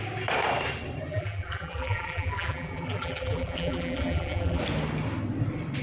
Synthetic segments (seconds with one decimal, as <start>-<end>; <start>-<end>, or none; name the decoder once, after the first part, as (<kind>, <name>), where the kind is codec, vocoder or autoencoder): 1.1-4.6 (vocoder, BigVGAN v2)